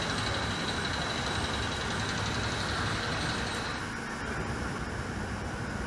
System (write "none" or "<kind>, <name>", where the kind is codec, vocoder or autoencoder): none